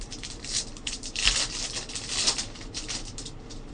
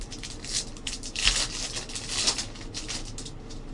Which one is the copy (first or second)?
first